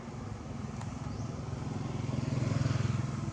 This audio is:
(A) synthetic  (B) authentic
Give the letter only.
B